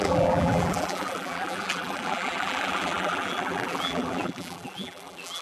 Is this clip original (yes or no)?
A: no